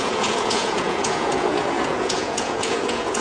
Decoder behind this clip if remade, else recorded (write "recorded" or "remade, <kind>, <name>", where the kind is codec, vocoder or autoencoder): remade, vocoder, Vocos